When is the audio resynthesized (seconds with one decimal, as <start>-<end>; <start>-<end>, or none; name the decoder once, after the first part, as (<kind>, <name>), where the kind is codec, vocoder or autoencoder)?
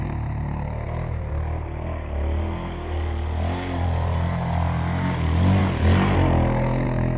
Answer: none